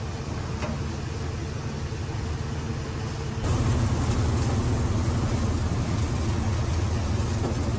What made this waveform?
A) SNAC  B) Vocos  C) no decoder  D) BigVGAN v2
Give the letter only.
C